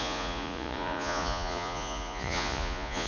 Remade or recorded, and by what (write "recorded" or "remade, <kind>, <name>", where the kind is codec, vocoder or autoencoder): remade, vocoder, Vocos